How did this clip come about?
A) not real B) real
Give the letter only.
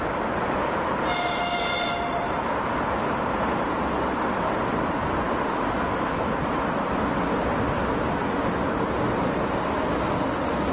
B